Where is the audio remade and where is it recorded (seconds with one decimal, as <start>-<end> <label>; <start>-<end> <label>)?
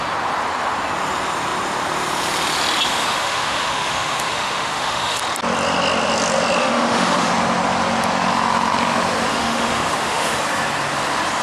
0.0-2.9 recorded; 2.9-5.2 remade; 5.2-6.6 recorded; 6.6-7.3 remade; 7.3-9.3 recorded; 9.3-10.4 remade; 10.4-11.4 recorded